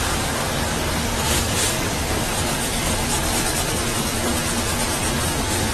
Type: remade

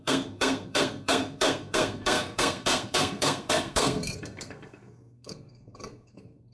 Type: remade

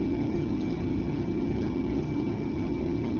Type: remade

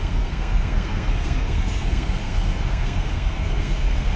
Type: remade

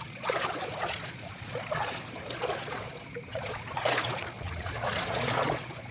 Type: remade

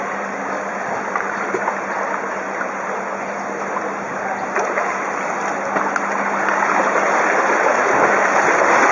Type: recorded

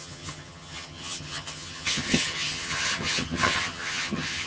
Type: remade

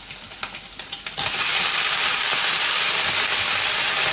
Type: recorded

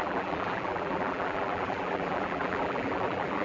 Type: remade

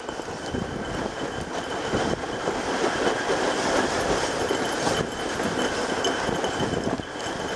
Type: recorded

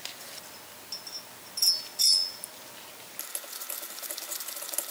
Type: recorded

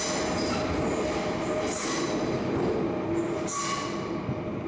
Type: recorded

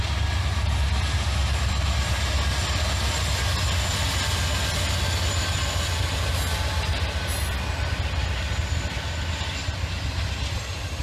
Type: recorded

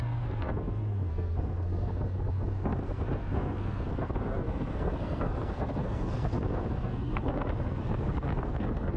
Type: remade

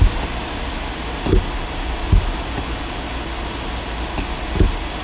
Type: recorded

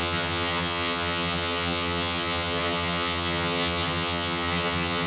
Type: remade